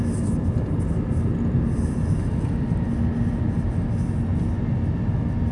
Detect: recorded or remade recorded